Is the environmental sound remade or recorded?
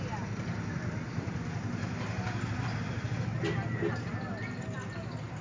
recorded